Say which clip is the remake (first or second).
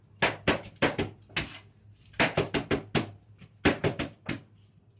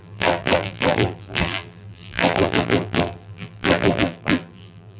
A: second